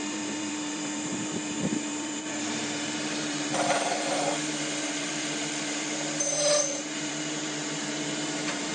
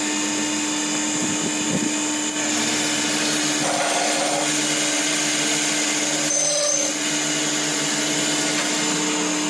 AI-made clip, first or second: first